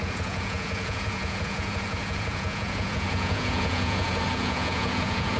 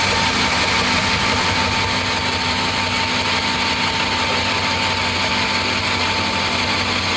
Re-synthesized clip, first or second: first